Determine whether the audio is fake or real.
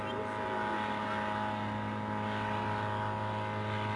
real